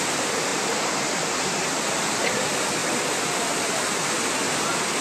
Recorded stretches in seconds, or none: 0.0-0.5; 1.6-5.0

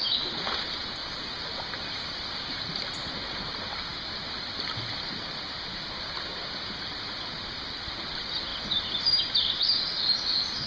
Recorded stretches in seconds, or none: 0.0-10.7

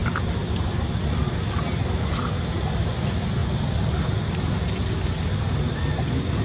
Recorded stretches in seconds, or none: 0.0-6.4

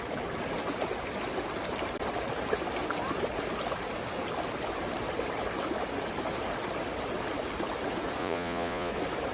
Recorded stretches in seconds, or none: 0.0-8.2; 8.9-9.3

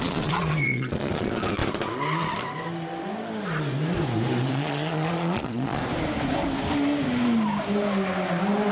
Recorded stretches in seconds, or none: 1.6-4.5; 5.8-8.7